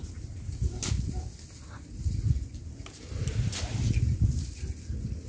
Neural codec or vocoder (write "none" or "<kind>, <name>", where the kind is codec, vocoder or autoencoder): none